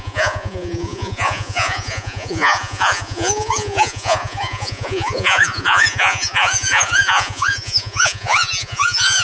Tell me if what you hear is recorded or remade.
remade